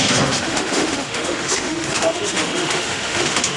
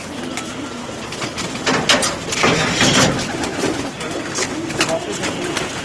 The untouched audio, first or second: second